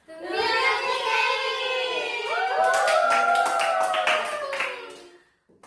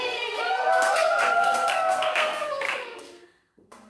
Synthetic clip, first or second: second